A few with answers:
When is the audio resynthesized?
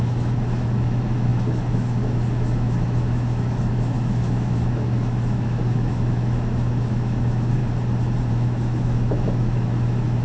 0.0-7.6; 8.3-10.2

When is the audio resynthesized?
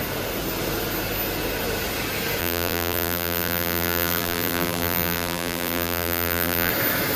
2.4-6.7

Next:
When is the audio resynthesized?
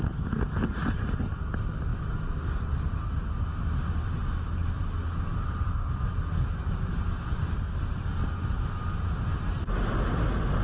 none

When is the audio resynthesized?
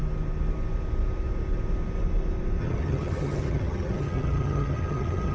2.6-5.3